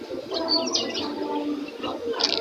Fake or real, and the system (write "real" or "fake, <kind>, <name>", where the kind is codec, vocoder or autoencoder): real